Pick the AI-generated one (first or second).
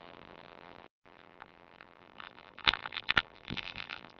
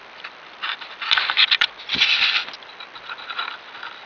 first